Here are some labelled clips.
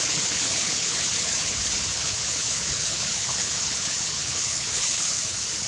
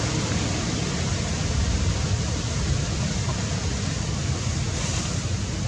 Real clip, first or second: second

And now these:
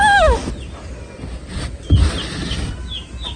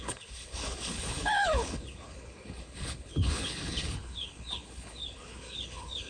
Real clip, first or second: first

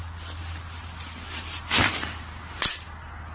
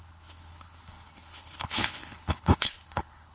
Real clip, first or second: first